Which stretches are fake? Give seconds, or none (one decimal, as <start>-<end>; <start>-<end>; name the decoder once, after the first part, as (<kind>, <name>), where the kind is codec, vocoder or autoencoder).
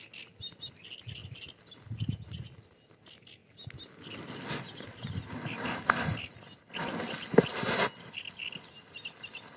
none